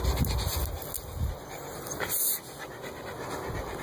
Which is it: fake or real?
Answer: real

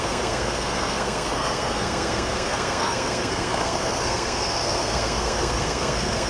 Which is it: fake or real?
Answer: fake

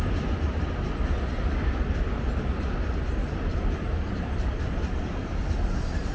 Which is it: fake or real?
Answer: real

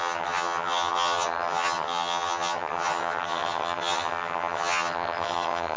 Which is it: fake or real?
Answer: fake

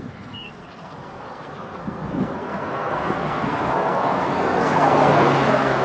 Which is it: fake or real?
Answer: fake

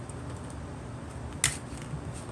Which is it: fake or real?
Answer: real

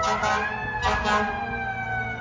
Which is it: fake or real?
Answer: real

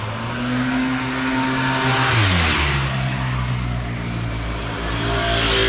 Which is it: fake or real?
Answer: real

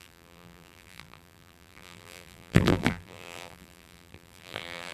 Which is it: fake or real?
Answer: fake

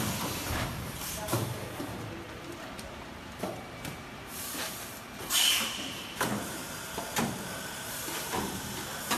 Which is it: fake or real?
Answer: fake